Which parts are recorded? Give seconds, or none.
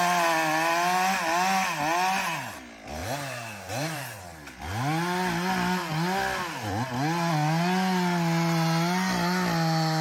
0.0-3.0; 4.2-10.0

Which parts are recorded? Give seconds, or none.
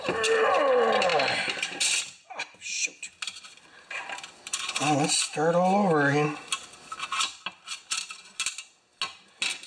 0.0-9.7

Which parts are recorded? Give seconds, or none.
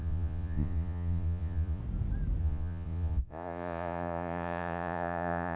1.8-2.4